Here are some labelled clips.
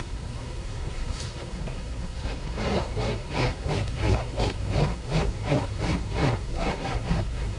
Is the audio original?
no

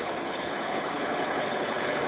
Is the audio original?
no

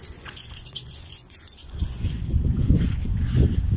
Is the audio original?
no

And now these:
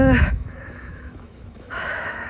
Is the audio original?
no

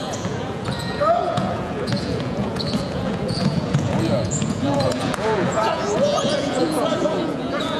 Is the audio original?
no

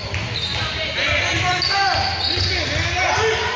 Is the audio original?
yes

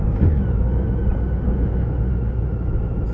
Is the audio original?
yes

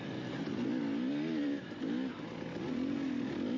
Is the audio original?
yes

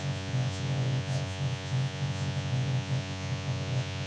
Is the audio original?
no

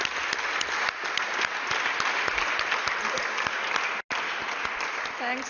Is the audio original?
yes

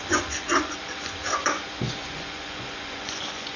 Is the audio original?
no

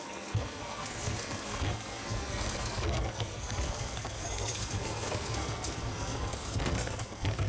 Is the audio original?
no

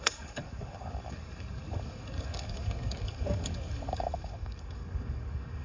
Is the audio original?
no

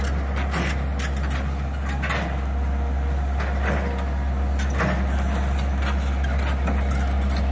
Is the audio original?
yes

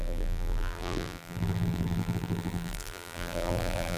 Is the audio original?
no